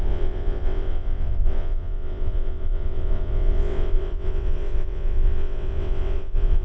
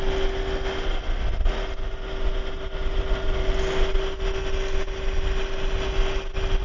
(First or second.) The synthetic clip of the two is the first